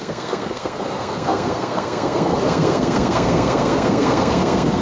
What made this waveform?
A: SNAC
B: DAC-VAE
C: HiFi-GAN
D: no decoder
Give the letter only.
A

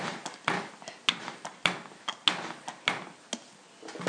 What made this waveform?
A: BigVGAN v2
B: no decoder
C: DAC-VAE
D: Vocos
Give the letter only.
B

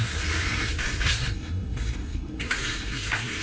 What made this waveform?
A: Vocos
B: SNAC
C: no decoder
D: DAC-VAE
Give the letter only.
B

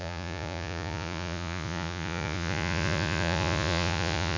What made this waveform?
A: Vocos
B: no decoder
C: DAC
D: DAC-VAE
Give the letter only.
A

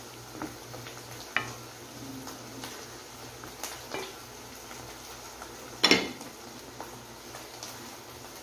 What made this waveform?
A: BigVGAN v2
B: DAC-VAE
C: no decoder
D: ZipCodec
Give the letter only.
C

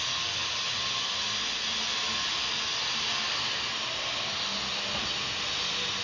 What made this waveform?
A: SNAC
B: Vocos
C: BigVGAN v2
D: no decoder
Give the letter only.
D